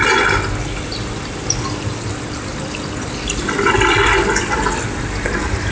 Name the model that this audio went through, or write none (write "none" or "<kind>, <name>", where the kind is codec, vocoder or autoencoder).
none